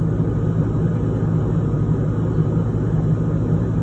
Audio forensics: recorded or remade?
recorded